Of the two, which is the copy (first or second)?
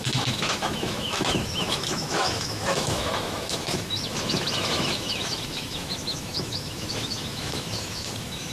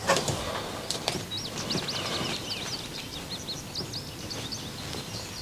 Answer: first